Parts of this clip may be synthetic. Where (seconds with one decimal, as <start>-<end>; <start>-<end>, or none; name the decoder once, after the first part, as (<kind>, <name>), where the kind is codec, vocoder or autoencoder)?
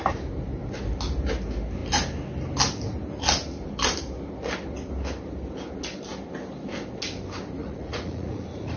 7.6-8.8 (vocoder, Vocos)